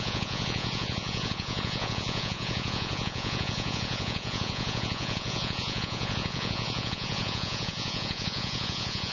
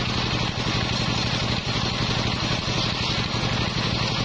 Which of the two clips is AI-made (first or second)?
first